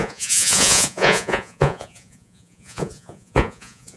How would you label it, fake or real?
fake